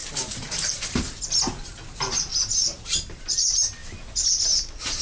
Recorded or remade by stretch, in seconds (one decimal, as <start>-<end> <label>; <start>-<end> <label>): 0.0-1.2 remade; 1.2-2.3 recorded; 2.3-3.2 remade; 3.2-5.0 recorded